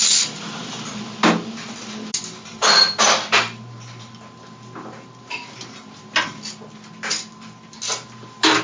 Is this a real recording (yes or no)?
yes